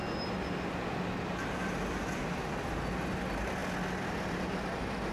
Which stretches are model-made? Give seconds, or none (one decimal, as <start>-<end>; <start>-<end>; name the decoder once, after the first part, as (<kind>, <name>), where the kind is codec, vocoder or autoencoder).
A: none